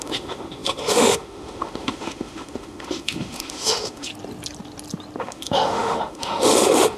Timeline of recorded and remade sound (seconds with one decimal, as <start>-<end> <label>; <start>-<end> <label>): 0.0-4.1 remade; 4.1-5.2 recorded; 5.2-7.0 remade